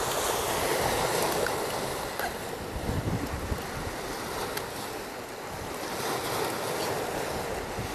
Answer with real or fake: real